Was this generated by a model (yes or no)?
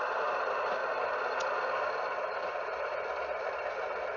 no